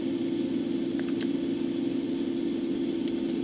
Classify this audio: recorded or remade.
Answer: recorded